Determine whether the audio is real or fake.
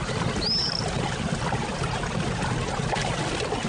real